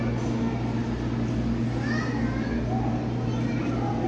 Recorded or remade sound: recorded